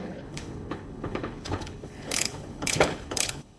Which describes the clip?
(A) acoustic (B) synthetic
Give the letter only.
B